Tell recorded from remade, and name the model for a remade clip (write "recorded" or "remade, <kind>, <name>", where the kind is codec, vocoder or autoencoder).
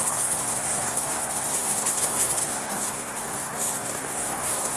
remade, codec, SNAC